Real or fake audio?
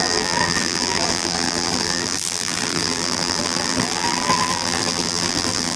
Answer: fake